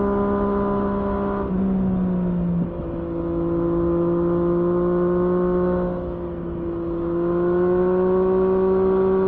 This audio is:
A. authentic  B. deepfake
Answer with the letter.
A